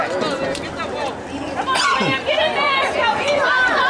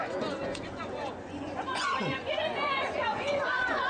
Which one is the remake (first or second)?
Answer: second